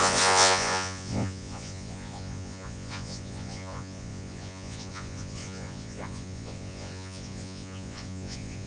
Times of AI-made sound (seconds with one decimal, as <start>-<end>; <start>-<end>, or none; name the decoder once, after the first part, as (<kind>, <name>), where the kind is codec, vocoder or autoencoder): 0.0-8.7 (vocoder, Vocos)